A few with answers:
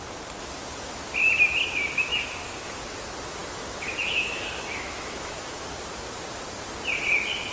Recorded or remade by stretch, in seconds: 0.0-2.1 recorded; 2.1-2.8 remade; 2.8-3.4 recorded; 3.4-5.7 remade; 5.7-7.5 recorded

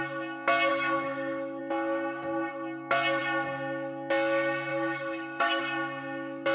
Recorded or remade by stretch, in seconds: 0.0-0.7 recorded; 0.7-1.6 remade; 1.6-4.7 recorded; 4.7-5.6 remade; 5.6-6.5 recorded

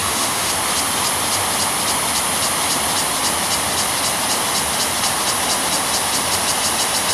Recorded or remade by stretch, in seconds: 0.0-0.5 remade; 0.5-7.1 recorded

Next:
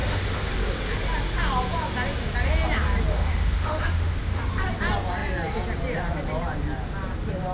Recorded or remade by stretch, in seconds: 0.0-0.5 remade; 0.5-3.1 recorded; 3.1-4.4 remade; 4.4-7.5 recorded

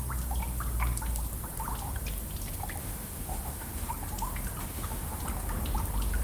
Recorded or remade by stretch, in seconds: 0.0-2.8 recorded; 2.8-3.9 remade; 3.9-4.6 recorded; 4.6-5.2 remade; 5.2-6.2 recorded